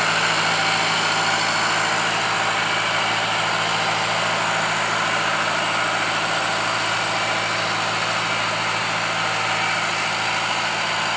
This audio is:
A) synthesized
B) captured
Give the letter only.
B